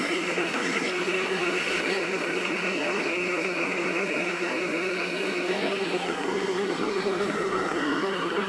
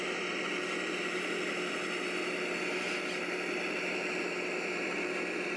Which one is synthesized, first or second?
first